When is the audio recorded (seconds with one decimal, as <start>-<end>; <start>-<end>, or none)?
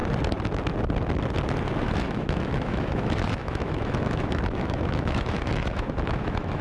0.0-1.8